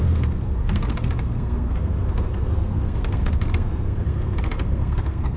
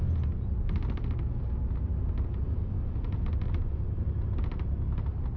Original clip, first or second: second